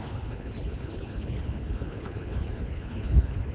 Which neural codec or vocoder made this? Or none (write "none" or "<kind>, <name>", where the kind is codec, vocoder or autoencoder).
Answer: codec, HILCodec